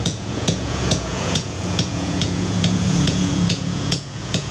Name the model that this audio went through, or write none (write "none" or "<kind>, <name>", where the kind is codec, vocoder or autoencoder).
vocoder, Vocos